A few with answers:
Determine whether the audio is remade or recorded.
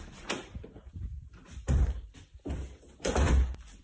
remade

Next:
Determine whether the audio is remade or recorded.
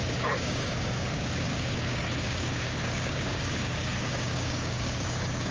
remade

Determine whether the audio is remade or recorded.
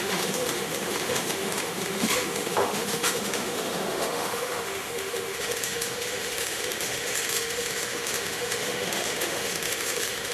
remade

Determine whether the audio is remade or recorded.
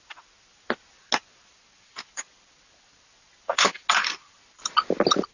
recorded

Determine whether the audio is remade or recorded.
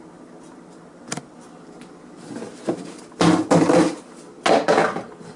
recorded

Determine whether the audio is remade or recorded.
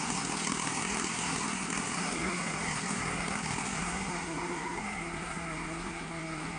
remade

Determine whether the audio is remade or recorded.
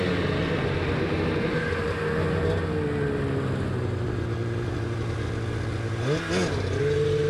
recorded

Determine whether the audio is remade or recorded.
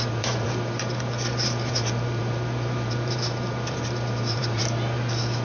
remade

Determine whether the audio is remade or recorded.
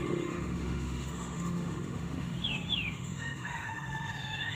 remade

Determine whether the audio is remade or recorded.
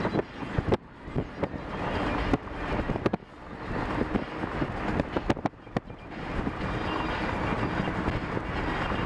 recorded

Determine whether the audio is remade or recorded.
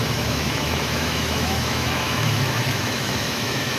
remade